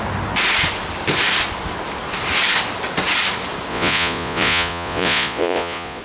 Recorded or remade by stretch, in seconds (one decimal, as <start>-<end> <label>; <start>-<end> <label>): 0.0-3.7 recorded; 3.7-6.0 remade